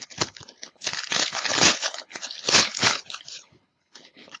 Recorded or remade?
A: remade